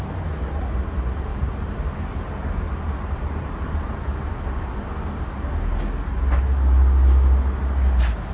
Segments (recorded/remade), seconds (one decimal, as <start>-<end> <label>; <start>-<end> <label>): 0.0-1.3 recorded; 1.3-4.3 remade; 4.3-8.3 recorded